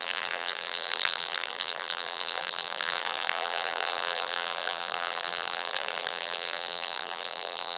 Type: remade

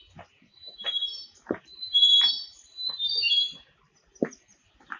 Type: remade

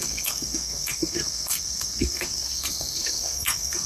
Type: remade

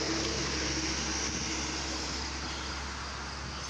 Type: recorded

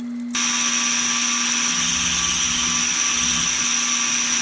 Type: recorded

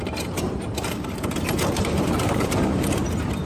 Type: remade